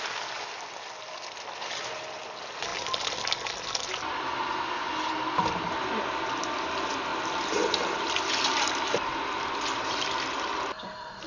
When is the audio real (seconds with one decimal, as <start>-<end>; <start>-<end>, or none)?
0.0-7.1; 10.1-11.3